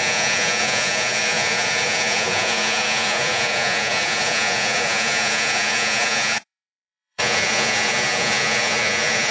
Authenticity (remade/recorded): remade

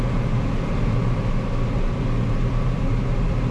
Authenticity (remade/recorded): recorded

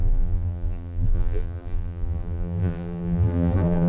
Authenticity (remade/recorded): remade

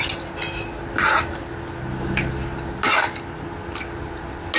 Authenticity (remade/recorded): recorded